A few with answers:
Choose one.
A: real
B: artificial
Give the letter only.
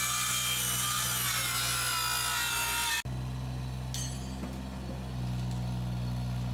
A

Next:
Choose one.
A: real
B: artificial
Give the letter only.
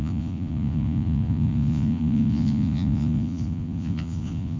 B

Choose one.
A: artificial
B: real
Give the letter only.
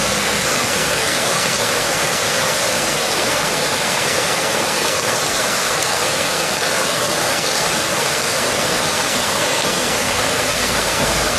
A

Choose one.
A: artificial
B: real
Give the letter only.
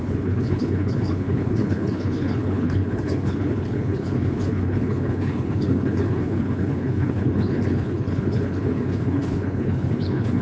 A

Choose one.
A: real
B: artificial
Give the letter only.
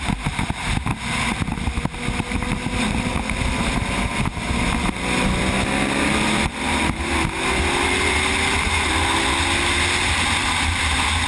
A